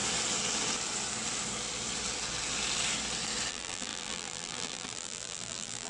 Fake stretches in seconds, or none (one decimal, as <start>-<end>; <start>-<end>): 3.5-5.9